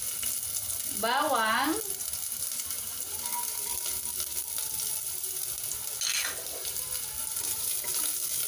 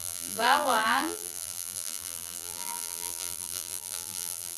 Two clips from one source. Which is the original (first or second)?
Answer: first